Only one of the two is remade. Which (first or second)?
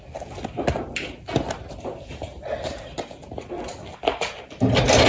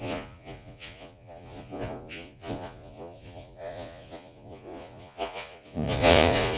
second